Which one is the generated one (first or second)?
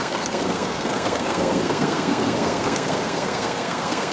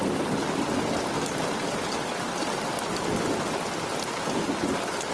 first